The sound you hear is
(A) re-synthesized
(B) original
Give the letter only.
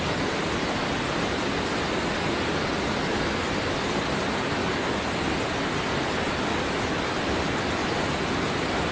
B